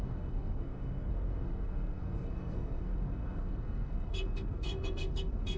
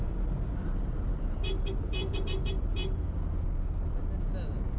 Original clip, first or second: second